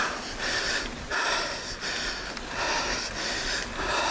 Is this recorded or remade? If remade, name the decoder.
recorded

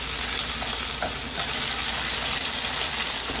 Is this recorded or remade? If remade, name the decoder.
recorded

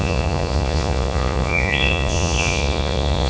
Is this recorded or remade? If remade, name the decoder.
remade, vocoder, Vocos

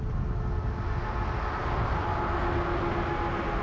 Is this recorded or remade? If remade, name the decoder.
recorded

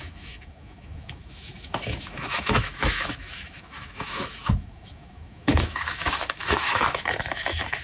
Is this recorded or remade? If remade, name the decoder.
remade, autoencoder, DAC-VAE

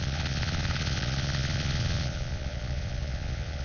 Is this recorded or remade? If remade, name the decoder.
remade, vocoder, Vocos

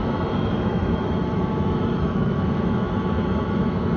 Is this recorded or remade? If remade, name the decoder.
remade, autoencoder, DAC-VAE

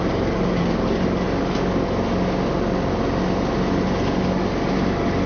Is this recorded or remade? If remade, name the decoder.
recorded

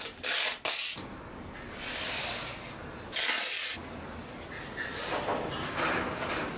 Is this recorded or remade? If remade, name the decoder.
recorded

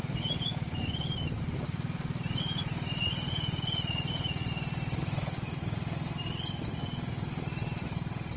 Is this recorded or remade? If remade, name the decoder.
recorded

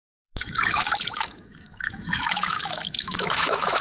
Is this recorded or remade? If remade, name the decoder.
remade, autoencoder, DAC-VAE